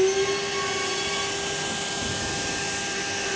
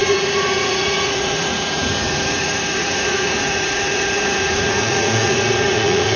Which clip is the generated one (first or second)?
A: second